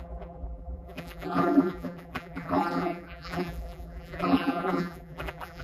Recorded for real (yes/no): no